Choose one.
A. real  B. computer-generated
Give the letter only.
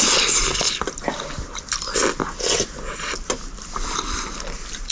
A